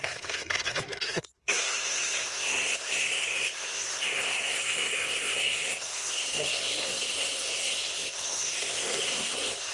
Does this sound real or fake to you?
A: fake